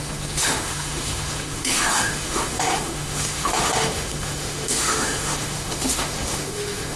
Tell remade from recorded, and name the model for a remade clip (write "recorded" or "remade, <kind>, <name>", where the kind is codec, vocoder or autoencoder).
remade, autoencoder, DAC-VAE